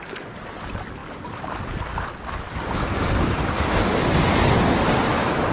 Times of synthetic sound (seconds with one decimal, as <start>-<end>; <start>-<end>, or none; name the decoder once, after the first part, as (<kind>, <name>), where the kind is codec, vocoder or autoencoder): none